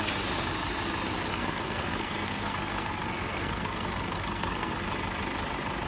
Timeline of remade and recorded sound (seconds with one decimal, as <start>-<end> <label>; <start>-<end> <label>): 0.0-1.3 recorded; 1.3-4.7 remade; 4.7-5.9 recorded